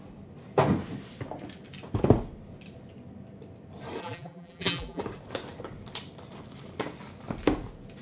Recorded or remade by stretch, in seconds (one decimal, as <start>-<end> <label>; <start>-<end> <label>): 0.0-4.0 recorded; 4.0-5.0 remade; 5.0-8.0 recorded